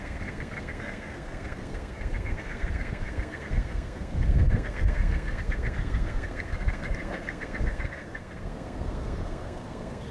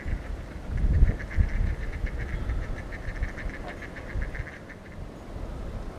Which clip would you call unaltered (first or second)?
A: second